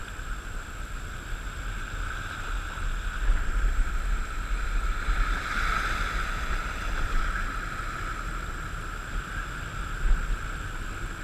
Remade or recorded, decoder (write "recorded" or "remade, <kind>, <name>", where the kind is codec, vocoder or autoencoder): recorded